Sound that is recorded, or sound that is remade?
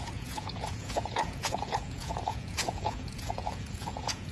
remade